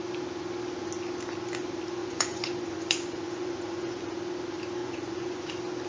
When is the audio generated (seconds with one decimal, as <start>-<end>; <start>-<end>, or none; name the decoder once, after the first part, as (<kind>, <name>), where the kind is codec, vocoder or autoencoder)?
2.0-4.0 (vocoder, Vocos); 4.8-5.5